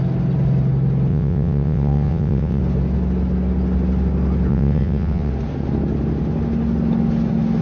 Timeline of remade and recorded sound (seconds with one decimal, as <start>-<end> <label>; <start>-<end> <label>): 0.0-1.1 recorded; 1.1-2.6 remade; 2.6-4.5 recorded; 4.5-5.3 remade; 5.3-7.6 recorded